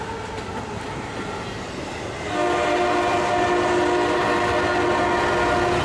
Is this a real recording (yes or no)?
yes